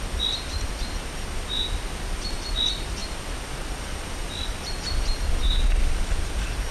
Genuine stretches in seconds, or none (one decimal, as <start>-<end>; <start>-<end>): 0.0-6.7